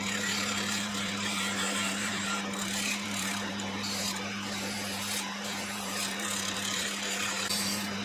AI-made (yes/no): yes